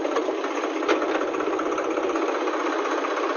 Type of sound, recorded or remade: recorded